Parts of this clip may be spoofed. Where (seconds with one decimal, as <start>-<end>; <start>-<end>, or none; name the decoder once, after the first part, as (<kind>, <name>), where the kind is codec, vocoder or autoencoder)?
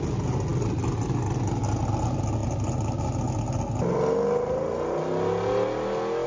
0.5-1.1 (vocoder, BigVGAN v2)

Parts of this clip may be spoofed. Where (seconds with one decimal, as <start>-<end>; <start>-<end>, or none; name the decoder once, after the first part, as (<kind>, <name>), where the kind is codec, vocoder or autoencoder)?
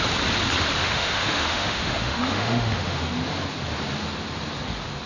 0.8-3.1 (autoencoder, DAC-VAE)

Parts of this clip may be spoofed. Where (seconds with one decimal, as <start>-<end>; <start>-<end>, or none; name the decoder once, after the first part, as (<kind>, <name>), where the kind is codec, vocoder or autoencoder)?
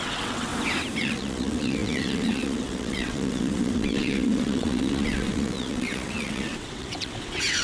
0.0-0.5 (vocoder, WaveNeXt); 1.0-7.6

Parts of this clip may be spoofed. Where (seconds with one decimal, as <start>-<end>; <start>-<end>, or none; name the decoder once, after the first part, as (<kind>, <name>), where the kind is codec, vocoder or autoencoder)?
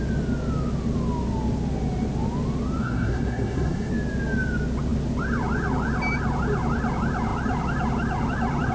2.8-3.9 (codec, SNAC)